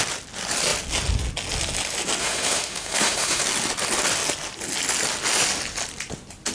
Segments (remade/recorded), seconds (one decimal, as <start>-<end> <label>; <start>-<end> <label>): 0.0-2.2 recorded; 2.2-3.4 remade; 3.4-6.5 recorded